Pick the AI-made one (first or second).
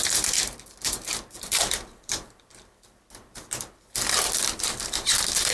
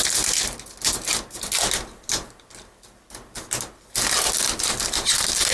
first